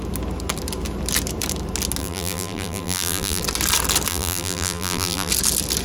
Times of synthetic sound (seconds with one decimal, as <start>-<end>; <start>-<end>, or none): 2.0-3.4; 4.1-5.3